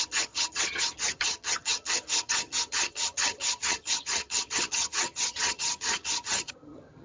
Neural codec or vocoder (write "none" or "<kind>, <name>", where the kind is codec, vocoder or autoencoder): vocoder, HiFi-GAN